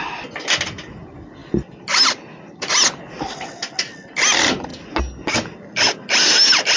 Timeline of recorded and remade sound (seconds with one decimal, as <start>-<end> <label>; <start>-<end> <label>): 0.0-6.8 recorded